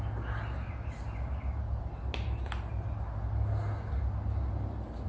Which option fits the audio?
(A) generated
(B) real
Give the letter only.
B